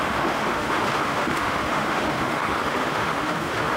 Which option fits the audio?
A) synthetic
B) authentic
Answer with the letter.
A